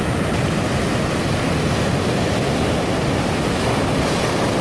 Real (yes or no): yes